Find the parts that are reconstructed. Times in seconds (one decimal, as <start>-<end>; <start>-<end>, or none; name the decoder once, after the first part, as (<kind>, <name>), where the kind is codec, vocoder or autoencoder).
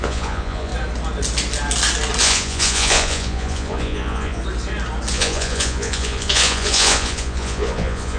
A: 0.0-0.7 (vocoder, Vocos); 2.2-4.4; 5.1-8.2